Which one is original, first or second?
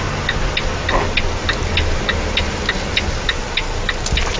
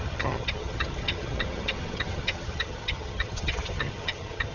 first